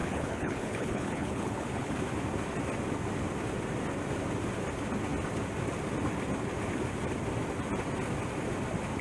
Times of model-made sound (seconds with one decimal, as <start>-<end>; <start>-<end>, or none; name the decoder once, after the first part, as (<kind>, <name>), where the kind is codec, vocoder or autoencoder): 0.0-1.9 (codec, HILCodec)